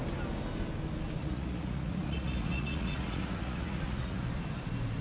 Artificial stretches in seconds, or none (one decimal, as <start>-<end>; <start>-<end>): 1.2-4.2